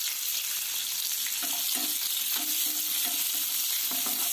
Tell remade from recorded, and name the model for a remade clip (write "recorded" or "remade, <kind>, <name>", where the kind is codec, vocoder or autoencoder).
recorded